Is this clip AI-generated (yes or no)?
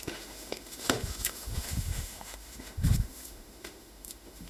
yes